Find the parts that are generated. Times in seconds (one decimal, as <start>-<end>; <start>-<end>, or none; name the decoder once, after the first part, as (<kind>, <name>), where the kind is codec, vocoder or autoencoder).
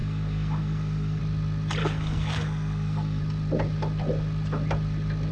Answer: 0.0-1.2 (codec, SNAC); 1.8-3.2